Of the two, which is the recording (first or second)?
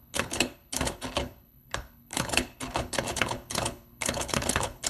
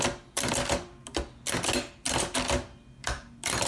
second